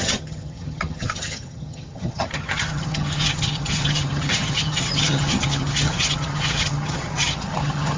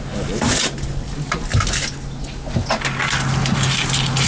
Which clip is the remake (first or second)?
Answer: first